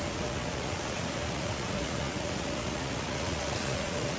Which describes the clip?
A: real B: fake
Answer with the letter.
B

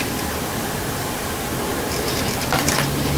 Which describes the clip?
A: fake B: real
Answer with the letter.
B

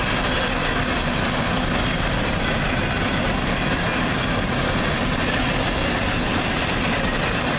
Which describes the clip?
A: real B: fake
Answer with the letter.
A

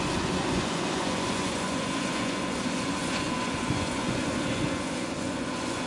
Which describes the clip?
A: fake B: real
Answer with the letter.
A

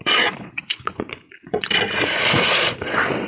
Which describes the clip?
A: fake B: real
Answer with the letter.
A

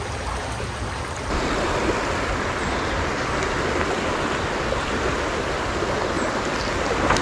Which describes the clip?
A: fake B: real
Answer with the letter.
B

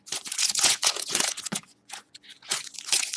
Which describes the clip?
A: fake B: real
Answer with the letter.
A